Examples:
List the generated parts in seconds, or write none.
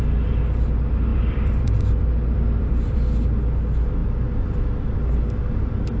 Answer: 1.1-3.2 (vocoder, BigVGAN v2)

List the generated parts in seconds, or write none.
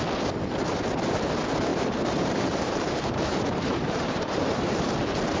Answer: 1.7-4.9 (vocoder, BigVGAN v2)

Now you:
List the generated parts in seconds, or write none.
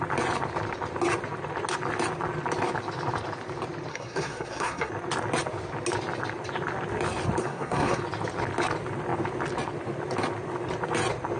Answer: 3.9-4.9 (codec, SNAC); 7.4-8.0